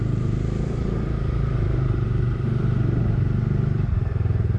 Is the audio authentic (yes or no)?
no